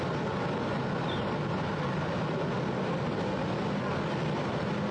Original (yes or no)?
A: yes